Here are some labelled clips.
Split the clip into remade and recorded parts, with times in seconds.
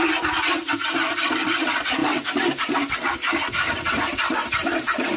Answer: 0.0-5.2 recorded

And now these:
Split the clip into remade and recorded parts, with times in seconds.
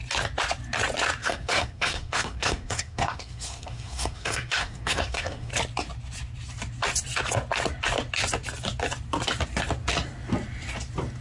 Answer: 0.0-1.2 recorded; 1.2-5.5 remade; 5.5-11.2 recorded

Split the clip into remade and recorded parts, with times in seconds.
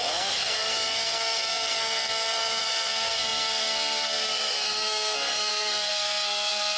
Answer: 0.0-6.8 remade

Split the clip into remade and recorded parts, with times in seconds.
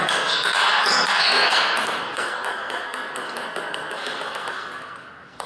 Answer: 0.0-5.5 remade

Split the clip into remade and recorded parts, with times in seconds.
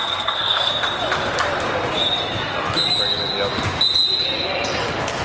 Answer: 0.0-0.7 remade; 0.7-5.2 recorded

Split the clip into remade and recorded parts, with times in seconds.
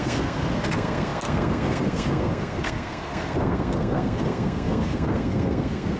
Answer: 0.0-6.0 remade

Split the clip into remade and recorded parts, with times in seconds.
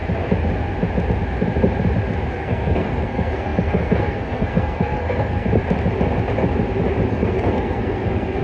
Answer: 0.0-2.3 recorded; 2.3-5.5 remade; 5.5-7.1 recorded; 7.1-8.4 remade